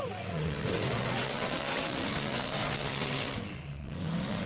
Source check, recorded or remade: remade